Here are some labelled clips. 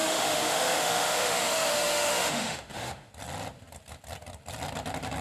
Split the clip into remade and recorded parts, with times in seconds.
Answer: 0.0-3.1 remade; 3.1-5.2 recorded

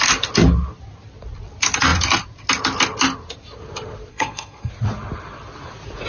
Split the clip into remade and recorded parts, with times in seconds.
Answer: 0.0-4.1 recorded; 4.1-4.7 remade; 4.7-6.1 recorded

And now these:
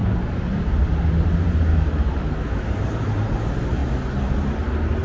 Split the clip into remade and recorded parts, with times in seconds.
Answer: 0.0-1.7 recorded; 1.7-2.7 remade; 2.7-5.0 recorded

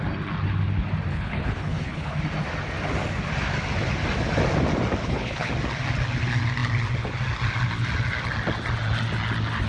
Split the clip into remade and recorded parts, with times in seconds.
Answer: 0.0-1.1 recorded; 1.1-2.2 remade; 2.2-5.0 recorded; 5.0-5.5 remade; 5.5-9.7 recorded

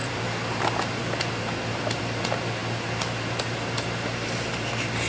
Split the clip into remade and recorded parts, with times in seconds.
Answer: 0.0-2.0 remade; 2.0-5.1 recorded

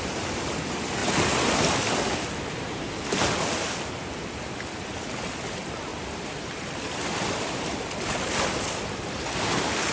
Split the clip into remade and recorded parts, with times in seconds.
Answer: 0.0-1.0 remade; 1.0-4.4 recorded; 4.4-9.9 remade